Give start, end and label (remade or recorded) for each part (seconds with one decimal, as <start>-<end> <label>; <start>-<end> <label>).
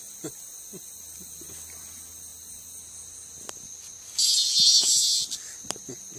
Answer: 0.0-6.2 recorded